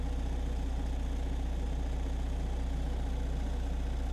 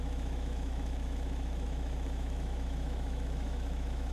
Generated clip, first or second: second